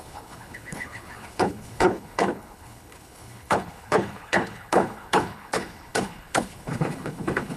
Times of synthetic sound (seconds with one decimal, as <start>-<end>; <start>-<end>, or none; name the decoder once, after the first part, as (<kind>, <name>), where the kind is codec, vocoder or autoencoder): 0.0-7.6 (codec, HILCodec)